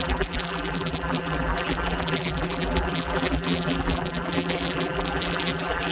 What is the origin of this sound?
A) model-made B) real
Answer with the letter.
A